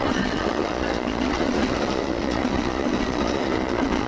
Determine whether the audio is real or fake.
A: fake